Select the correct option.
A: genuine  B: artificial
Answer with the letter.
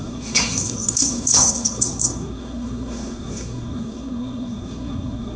B